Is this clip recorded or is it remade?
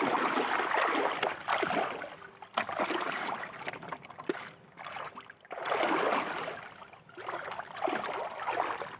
recorded